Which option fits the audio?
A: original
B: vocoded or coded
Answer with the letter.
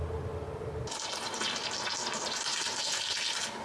A